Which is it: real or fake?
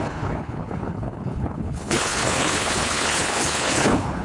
fake